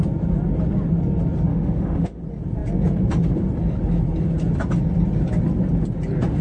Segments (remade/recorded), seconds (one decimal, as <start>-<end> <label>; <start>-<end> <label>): 0.0-1.5 recorded; 1.5-2.2 remade; 2.2-6.4 recorded